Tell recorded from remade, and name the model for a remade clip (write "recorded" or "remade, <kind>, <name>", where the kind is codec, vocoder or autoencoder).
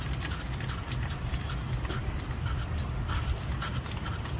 recorded